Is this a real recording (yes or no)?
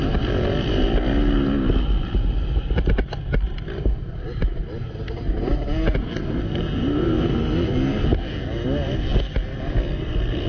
yes